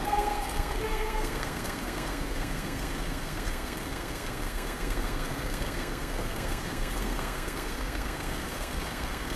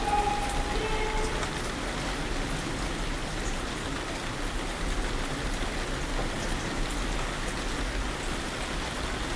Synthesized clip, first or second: first